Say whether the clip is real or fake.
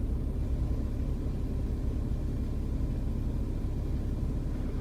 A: real